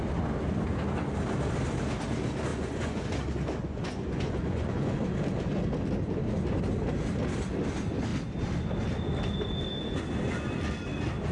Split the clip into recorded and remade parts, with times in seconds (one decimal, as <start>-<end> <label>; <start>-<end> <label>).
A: 0.0-2.5 recorded; 2.5-3.0 remade; 3.0-3.6 recorded; 3.6-5.0 remade; 5.0-11.3 recorded